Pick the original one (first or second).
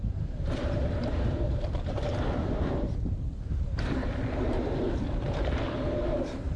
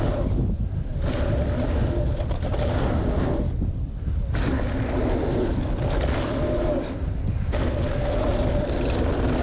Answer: second